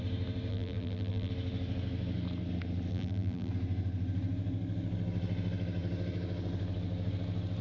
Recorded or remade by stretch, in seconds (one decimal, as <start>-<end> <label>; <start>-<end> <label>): 0.0-0.5 recorded; 0.5-1.3 remade; 1.3-2.9 recorded; 2.9-3.5 remade; 3.5-7.6 recorded